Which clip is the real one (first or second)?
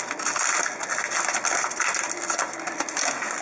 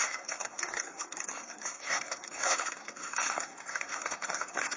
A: first